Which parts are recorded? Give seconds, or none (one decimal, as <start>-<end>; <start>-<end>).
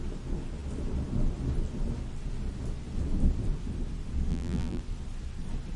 0.0-4.3; 4.8-5.8